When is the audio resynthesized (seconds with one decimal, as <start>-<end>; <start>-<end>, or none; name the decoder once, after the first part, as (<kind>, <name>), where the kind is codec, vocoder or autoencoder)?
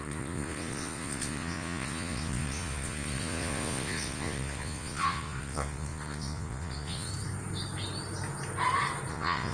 0.0-7.1 (vocoder, Vocos); 9.1-9.5